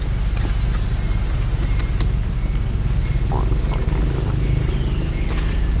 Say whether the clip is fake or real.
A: real